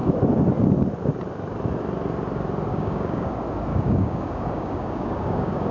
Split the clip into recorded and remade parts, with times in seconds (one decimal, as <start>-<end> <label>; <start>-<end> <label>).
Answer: 0.0-2.7 recorded; 2.7-3.3 remade; 3.3-3.7 recorded; 3.7-5.7 remade